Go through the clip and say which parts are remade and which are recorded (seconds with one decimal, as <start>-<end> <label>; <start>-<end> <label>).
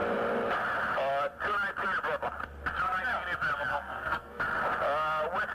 0.0-3.7 recorded; 3.7-4.4 remade; 4.4-5.5 recorded